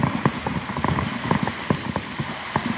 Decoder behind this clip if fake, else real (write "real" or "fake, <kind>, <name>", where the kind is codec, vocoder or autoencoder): real